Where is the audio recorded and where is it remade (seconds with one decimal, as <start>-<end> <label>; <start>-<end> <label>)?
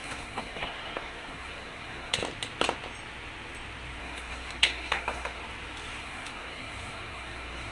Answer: 0.0-2.2 remade; 2.2-4.0 recorded; 4.0-5.4 remade; 5.4-6.0 recorded; 6.0-7.7 remade